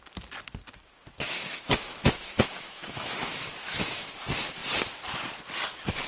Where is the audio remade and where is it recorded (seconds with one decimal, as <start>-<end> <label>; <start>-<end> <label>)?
0.0-0.8 recorded; 0.8-4.1 remade; 4.1-6.1 recorded